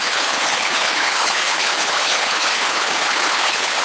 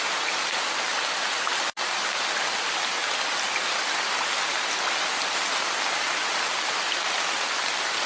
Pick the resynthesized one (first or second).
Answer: first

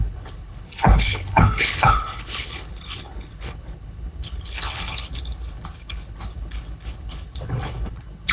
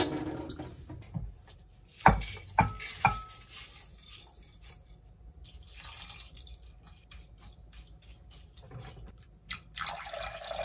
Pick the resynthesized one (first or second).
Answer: first